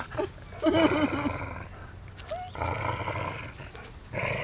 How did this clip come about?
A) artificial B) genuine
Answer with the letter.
B